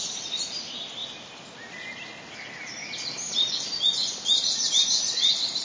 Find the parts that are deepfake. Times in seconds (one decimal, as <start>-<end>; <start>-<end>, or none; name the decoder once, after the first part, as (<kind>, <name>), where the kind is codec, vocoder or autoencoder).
none